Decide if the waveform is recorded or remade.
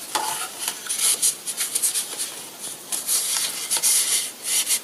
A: recorded